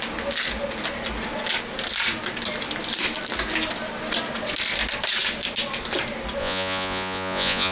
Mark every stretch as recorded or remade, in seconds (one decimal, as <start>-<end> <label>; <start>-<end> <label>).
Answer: 0.0-6.4 recorded; 6.4-7.7 remade